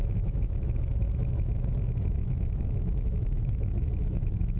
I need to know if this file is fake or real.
fake